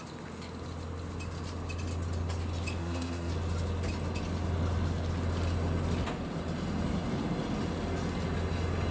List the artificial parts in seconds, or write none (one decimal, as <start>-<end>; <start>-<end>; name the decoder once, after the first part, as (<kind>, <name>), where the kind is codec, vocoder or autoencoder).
2.8-3.3 (codec, SNAC)